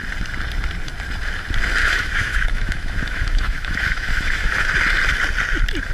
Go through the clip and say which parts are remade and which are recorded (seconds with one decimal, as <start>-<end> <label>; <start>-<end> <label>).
0.0-1.8 recorded; 1.8-4.7 remade; 4.7-5.9 recorded